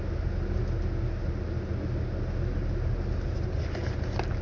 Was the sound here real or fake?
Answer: real